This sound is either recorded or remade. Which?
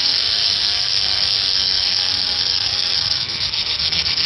remade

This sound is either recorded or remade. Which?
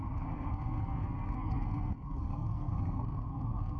remade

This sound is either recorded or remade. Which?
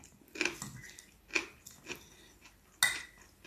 recorded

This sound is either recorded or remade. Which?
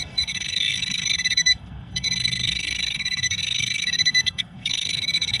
remade